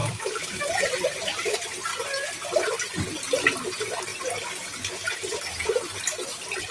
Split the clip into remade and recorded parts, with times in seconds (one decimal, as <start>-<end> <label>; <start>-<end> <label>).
0.0-0.7 remade; 0.7-6.7 recorded